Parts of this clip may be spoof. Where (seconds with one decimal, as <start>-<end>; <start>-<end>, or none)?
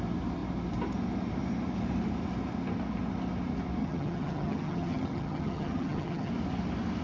3.8-6.3